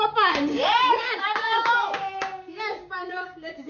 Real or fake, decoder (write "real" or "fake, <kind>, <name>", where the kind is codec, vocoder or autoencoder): fake, codec, DAC